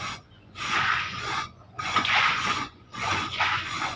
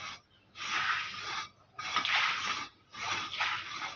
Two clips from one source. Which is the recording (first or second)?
second